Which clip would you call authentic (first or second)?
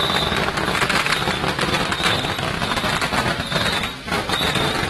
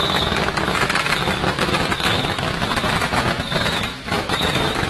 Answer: first